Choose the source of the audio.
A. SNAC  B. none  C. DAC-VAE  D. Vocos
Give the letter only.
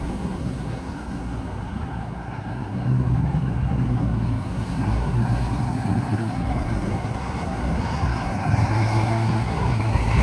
A